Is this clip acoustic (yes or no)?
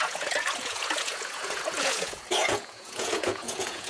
no